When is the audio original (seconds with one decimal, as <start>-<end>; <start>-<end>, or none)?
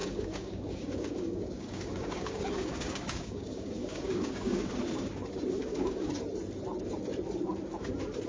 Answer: 4.7-5.6; 6.1-8.3